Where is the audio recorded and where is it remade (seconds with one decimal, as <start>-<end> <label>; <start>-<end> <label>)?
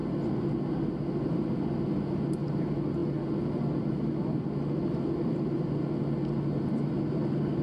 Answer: 0.0-7.6 recorded